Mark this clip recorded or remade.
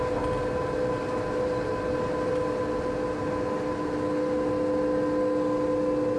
recorded